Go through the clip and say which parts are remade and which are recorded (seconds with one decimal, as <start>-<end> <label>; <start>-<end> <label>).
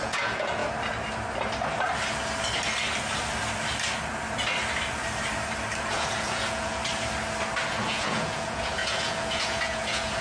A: 0.0-0.6 remade; 0.6-5.8 recorded; 5.8-6.8 remade; 6.8-7.7 recorded; 7.7-10.2 remade